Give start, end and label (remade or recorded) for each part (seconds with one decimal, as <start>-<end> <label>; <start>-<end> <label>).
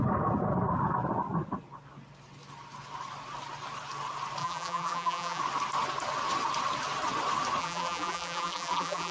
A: 0.0-4.4 recorded; 4.4-5.4 remade; 5.4-7.6 recorded; 7.6-9.1 remade